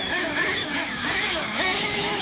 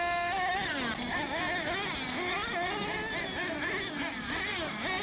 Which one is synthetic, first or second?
first